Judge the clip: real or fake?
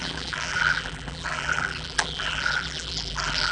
fake